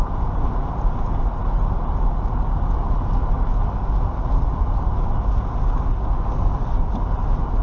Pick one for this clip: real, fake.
real